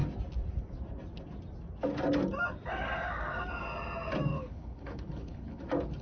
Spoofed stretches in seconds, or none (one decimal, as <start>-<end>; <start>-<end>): 4.3-5.6